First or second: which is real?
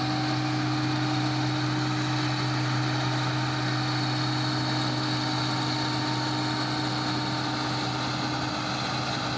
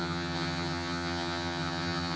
first